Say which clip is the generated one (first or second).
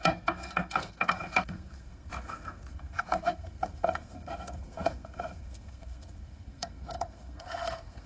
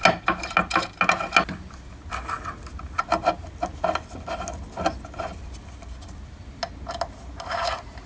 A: first